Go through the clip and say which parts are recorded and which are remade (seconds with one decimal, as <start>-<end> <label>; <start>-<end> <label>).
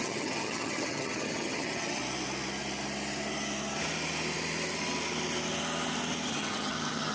0.0-2.0 remade; 2.0-6.3 recorded; 6.3-7.1 remade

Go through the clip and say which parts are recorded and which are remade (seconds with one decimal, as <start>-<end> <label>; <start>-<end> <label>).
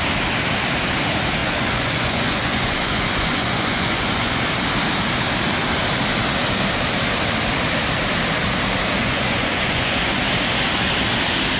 0.0-1.4 recorded; 1.4-4.4 remade; 4.4-9.0 recorded; 9.0-10.2 remade; 10.2-11.6 recorded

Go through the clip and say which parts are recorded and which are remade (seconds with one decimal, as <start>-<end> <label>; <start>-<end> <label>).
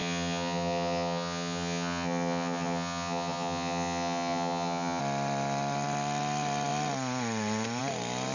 0.0-5.0 remade; 5.0-8.3 recorded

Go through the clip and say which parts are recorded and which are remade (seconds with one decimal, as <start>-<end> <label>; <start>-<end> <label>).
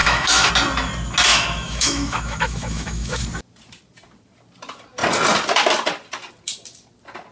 0.0-0.5 remade; 0.5-1.3 recorded; 1.3-3.2 remade; 3.2-7.3 recorded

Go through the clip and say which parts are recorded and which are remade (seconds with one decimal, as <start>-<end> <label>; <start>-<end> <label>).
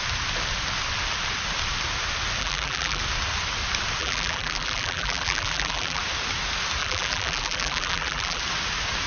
0.0-2.4 recorded; 2.4-3.0 remade; 3.0-4.0 recorded; 4.0-6.0 remade; 6.0-6.8 recorded; 6.8-8.4 remade; 8.4-9.1 recorded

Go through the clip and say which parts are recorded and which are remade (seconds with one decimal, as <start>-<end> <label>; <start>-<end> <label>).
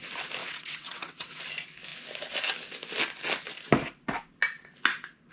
0.0-0.4 recorded; 0.4-1.4 remade; 1.4-5.3 recorded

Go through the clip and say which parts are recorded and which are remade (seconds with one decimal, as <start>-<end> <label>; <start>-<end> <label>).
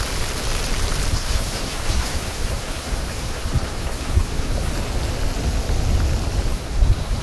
0.0-1.1 recorded; 1.1-4.7 remade; 4.7-6.5 recorded; 6.5-7.2 remade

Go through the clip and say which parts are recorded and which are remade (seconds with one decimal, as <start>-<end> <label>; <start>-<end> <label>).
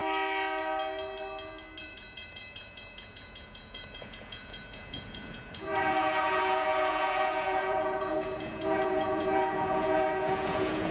0.0-1.8 recorded; 1.8-10.9 remade